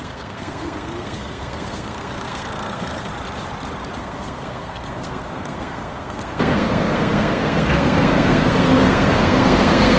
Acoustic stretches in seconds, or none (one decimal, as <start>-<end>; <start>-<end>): 3.1-4.0